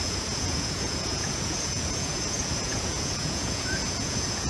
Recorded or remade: remade